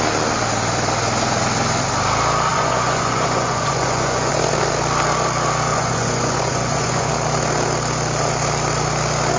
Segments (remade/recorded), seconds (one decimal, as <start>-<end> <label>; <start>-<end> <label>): 0.0-2.5 recorded; 2.5-4.3 remade; 4.3-5.7 recorded; 5.7-7.1 remade; 7.1-9.4 recorded